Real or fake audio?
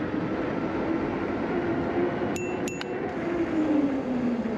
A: real